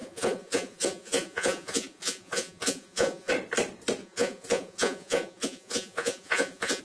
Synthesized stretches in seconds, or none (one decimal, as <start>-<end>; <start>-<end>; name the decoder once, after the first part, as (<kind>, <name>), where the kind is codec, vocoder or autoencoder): 0.0-3.3 (vocoder, Vocos); 4.0-6.8